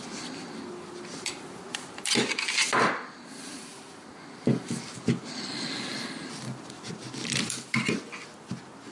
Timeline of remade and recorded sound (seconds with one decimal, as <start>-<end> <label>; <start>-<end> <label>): 0.0-8.9 recorded